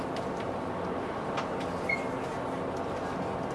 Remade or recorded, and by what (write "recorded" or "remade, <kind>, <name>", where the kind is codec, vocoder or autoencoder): recorded